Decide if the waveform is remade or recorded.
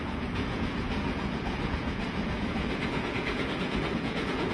remade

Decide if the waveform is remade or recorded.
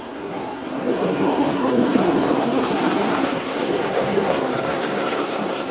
remade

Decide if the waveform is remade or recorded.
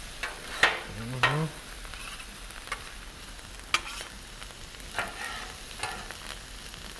recorded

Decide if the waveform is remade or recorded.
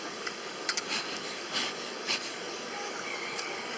remade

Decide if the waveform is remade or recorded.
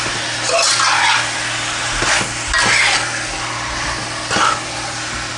recorded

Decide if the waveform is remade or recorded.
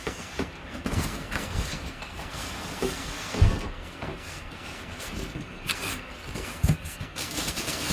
remade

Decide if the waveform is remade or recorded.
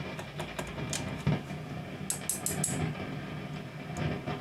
recorded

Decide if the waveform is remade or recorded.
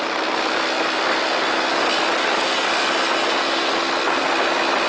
recorded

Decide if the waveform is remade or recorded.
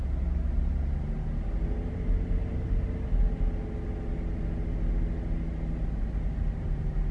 recorded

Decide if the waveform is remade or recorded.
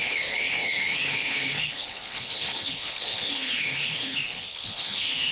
remade